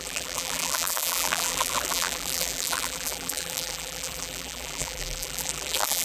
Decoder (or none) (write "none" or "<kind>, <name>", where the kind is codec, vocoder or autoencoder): vocoder, BigVGAN v2